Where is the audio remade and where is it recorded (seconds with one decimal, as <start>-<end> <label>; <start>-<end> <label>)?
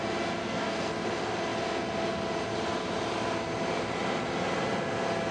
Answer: 0.0-0.4 recorded; 0.4-0.9 remade; 0.9-5.3 recorded